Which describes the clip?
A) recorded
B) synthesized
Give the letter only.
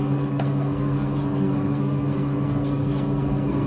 B